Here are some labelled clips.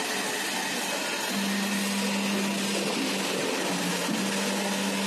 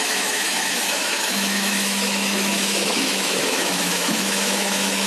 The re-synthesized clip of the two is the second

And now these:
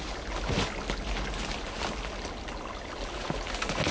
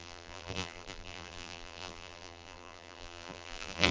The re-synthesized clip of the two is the second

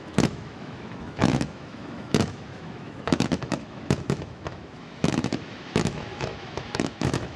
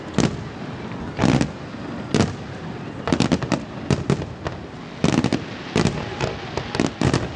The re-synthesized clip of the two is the first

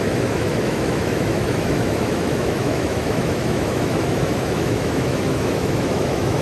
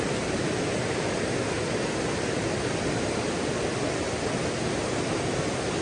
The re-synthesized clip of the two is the first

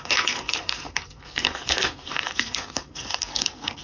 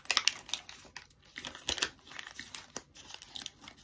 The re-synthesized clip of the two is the first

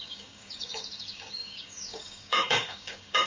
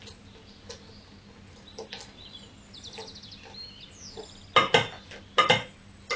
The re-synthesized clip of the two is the first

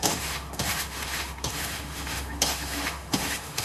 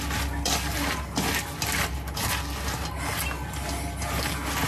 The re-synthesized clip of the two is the first